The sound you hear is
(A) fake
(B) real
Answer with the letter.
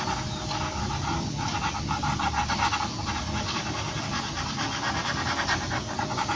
B